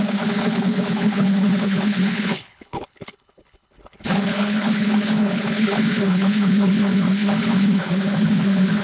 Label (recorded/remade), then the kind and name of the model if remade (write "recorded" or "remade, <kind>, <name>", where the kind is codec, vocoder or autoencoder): remade, codec, HILCodec